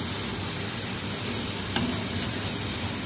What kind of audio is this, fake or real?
real